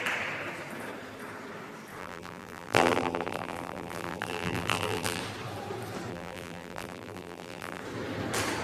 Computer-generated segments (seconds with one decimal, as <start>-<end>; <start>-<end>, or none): 2.0-5.2; 6.1-7.8